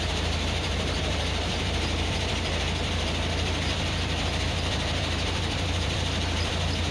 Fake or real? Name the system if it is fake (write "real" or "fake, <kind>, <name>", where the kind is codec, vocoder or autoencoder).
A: fake, vocoder, BigVGAN v2